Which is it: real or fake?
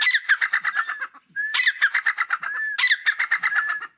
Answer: real